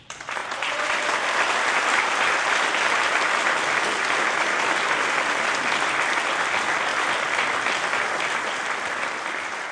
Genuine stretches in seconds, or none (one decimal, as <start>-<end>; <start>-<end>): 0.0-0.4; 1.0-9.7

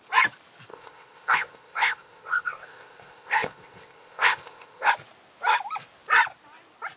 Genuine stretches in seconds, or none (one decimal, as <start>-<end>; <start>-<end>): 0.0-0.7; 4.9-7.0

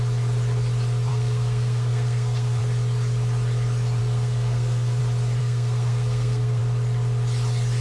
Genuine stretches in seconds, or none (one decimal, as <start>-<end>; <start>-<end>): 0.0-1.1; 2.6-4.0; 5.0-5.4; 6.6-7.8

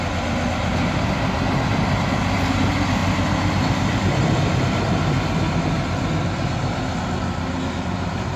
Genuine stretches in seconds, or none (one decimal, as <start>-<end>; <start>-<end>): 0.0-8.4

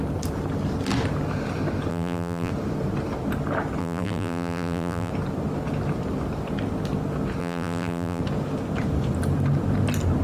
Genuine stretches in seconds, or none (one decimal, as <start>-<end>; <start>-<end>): 0.0-1.9; 2.5-3.8; 5.1-7.4; 8.2-10.2